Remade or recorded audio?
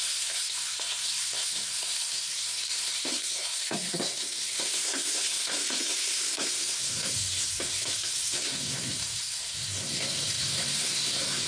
remade